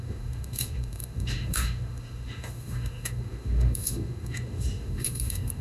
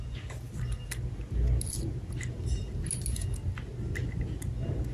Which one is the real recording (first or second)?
second